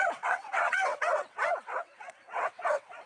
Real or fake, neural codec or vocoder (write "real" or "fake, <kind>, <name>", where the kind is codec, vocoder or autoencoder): fake, vocoder, WaveNeXt